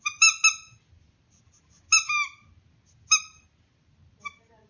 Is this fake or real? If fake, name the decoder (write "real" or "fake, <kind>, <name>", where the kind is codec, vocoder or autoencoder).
real